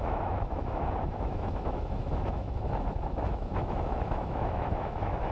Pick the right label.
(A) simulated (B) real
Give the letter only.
A